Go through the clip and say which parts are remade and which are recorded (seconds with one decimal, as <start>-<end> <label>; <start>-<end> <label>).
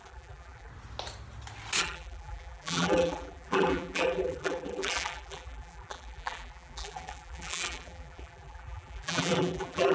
0.0-0.7 remade; 0.7-1.8 recorded; 1.8-9.9 remade